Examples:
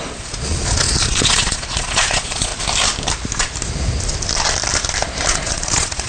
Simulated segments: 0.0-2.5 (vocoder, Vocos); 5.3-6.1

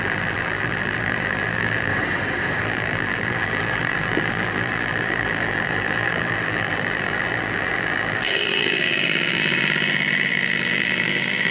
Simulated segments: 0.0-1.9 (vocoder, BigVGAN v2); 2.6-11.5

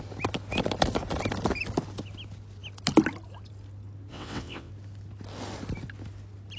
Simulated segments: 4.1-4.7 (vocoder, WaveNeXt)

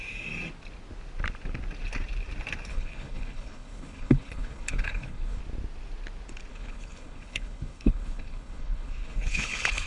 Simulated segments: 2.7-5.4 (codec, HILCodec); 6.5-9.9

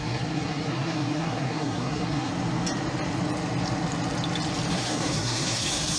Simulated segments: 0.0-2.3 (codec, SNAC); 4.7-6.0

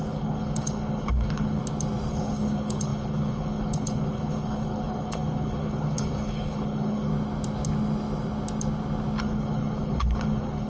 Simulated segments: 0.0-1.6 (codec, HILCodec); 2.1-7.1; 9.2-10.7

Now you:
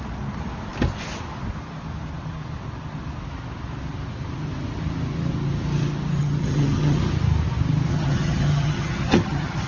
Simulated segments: 6.2-7.0 (vocoder, HiFi-GAN); 7.9-9.7